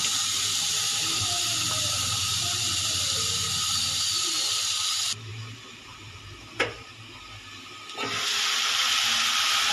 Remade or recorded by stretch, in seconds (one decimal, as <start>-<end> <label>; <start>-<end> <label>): 0.0-9.7 recorded